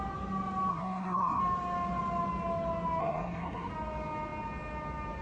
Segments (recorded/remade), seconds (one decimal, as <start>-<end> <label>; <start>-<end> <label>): 0.0-0.7 recorded; 0.7-1.4 remade; 1.4-3.0 recorded; 3.0-3.7 remade; 3.7-5.2 recorded